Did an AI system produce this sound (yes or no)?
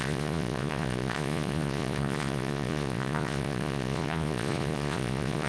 yes